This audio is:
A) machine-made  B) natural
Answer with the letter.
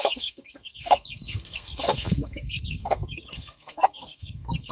A